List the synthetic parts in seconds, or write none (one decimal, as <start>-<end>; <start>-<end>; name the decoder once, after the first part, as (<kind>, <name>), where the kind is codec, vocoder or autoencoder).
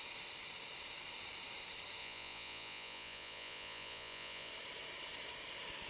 2.0-4.5 (vocoder, Vocos)